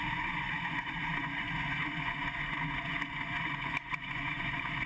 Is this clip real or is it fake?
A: fake